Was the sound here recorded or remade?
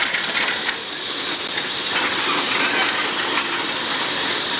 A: recorded